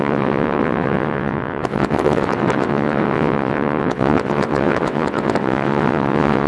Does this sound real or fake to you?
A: fake